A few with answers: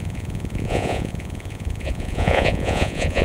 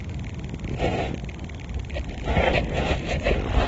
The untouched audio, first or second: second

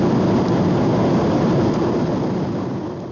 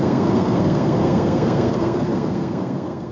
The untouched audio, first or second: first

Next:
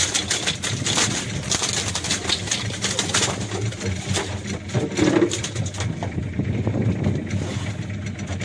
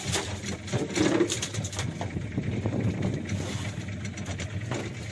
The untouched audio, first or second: first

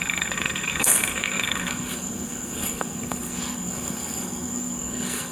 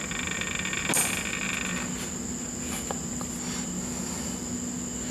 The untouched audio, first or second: second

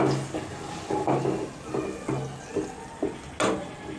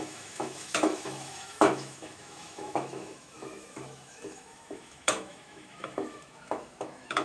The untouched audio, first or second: first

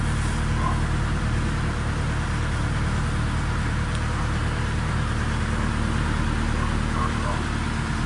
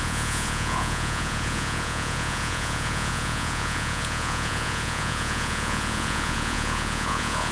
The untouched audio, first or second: first